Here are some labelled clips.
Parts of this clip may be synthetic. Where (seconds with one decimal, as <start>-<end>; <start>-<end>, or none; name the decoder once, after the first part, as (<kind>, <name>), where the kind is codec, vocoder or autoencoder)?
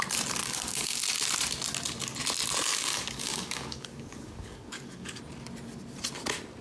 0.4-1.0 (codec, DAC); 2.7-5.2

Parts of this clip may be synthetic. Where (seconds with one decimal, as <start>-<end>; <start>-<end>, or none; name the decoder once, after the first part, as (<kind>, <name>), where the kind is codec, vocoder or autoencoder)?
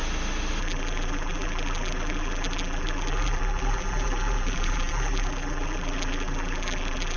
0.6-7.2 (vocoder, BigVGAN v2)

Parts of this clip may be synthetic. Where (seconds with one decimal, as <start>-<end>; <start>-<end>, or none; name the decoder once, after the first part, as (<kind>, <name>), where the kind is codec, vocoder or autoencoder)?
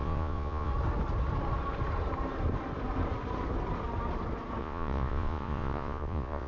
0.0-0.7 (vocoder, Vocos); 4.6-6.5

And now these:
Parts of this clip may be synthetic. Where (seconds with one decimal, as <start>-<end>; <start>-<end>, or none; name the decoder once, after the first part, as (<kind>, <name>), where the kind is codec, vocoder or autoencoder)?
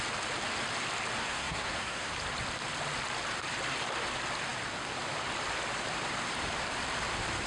1.2-2.1 (codec, SNAC)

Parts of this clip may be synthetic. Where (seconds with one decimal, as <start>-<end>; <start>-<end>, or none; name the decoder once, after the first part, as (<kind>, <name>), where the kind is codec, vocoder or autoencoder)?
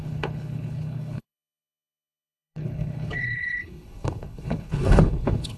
0.0-5.6 (codec, HILCodec)